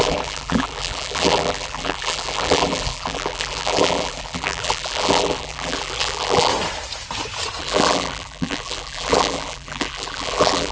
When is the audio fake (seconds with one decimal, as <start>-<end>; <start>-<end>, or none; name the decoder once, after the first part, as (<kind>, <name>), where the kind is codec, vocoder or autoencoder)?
0.0-6.5 (vocoder, BigVGAN v2); 7.6-10.7